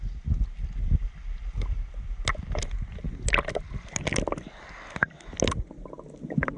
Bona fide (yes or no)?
yes